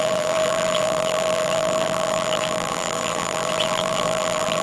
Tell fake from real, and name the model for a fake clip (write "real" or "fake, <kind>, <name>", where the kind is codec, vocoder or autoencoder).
fake, vocoder, BigVGAN v2